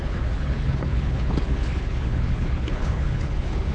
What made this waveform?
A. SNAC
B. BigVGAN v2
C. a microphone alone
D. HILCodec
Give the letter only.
D